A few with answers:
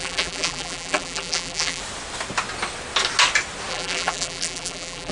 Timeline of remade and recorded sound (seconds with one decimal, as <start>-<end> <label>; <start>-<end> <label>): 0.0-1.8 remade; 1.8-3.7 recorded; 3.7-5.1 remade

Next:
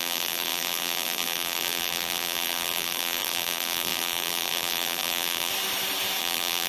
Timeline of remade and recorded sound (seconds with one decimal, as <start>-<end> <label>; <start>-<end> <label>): 0.0-5.5 remade; 5.5-6.2 recorded; 6.2-6.7 remade

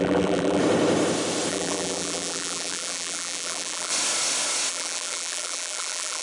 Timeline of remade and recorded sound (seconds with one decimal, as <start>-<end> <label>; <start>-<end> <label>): 0.0-0.6 remade; 0.6-1.5 recorded; 1.5-3.9 remade; 3.9-4.7 recorded; 4.7-6.2 remade

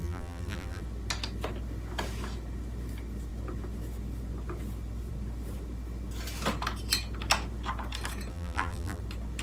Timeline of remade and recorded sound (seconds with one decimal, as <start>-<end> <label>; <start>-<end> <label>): 0.0-0.8 remade; 0.8-8.3 recorded; 8.3-9.0 remade; 9.0-9.4 recorded